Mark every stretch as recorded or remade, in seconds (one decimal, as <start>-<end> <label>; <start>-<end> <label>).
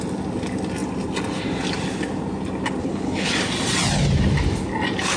0.0-2.8 recorded; 2.8-3.3 remade; 3.3-5.2 recorded